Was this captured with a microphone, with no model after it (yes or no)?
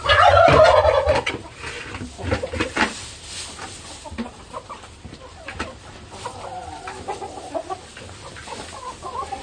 yes